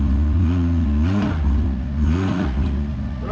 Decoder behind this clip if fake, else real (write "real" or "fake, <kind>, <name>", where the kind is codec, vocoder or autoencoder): fake, vocoder, Vocos